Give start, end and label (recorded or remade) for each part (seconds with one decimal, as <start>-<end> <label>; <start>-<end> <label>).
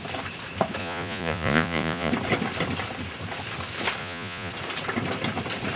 0.0-0.8 recorded; 0.8-2.1 remade; 2.1-4.0 recorded; 4.0-4.5 remade; 4.5-5.8 recorded